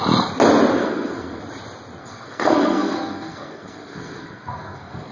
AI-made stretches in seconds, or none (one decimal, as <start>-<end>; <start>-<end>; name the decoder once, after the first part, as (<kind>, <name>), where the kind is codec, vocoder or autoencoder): 0.8-1.4 (codec, SNAC); 2.0-5.1